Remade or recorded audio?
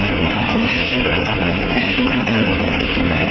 remade